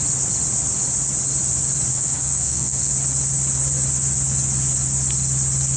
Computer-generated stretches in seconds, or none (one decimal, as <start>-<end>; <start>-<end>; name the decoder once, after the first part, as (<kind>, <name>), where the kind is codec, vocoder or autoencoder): 1.9-2.9 (codec, SNAC)